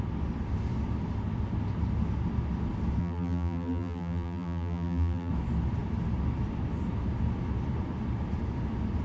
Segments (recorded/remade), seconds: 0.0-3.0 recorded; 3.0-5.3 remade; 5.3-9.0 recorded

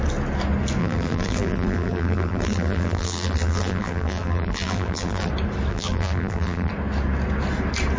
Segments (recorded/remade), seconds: 0.0-0.8 recorded; 0.8-5.3 remade; 5.3-5.7 recorded; 5.7-6.7 remade; 6.7-8.0 recorded

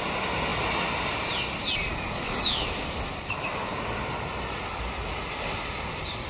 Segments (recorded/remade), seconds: 0.0-0.5 remade; 0.5-2.2 recorded; 2.2-6.3 remade